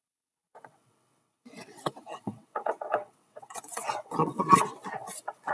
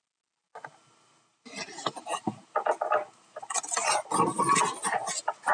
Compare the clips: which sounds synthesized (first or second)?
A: first